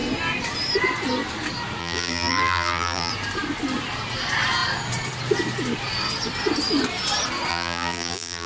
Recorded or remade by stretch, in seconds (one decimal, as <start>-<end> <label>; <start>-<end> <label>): 0.0-1.8 recorded; 1.8-3.1 remade; 3.1-7.5 recorded; 7.5-8.5 remade

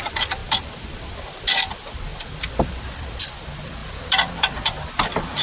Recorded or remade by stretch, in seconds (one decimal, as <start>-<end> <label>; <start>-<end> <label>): 0.0-5.4 remade